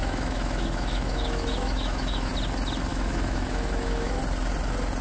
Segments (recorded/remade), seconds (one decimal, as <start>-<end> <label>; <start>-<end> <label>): 0.0-2.3 remade; 2.3-2.9 recorded; 2.9-4.2 remade; 4.2-5.0 recorded